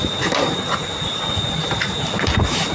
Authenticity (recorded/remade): remade